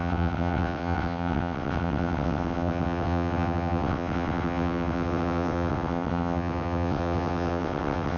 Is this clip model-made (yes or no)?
yes